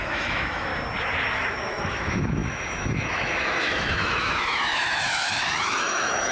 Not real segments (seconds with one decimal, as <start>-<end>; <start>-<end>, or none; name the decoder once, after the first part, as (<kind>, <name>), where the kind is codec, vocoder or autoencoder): 0.0-0.7 (autoencoder, DAC-VAE); 1.3-6.3

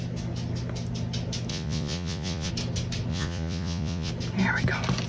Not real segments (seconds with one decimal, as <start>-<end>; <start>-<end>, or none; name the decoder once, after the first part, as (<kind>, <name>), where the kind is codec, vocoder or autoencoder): 1.5-2.5 (vocoder, Vocos); 3.1-4.1

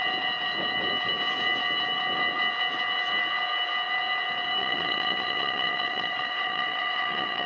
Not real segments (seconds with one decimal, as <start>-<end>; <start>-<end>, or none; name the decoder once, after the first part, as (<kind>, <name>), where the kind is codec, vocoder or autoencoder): 4.6-7.5 (vocoder, WaveNeXt)

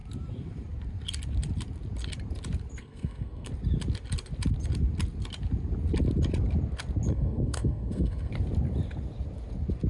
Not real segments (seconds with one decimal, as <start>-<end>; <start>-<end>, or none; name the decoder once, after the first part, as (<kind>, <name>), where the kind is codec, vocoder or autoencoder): 2.8-3.5 (codec, SNAC); 7.1-8.3